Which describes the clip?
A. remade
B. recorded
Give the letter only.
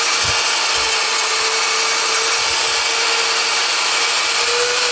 B